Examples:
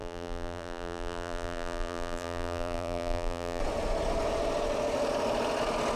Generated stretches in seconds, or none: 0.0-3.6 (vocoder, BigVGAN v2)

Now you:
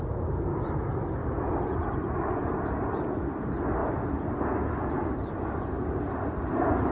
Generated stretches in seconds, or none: none

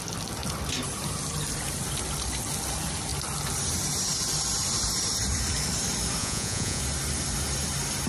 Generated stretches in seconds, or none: 6.2-6.8 (vocoder, Vocos)

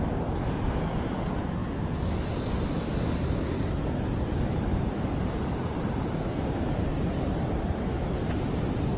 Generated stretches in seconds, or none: none

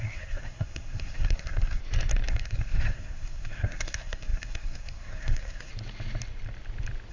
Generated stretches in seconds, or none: 0.0-1.8 (codec, SNAC); 2.3-5.7